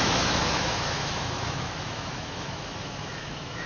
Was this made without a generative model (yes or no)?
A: no